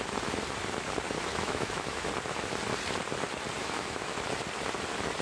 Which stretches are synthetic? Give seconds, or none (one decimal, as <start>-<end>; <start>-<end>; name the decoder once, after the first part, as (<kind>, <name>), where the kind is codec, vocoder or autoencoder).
1.3-2.1 (autoencoder, DAC-VAE); 3.6-4.3

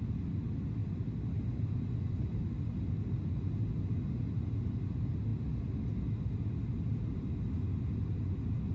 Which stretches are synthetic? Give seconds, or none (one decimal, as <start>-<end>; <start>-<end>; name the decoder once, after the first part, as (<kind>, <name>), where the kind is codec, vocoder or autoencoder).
none

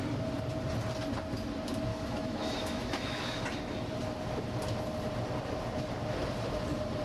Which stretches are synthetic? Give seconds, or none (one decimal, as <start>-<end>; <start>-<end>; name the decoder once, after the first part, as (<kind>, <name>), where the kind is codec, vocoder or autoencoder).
1.9-3.4 (autoencoder, DAC-VAE)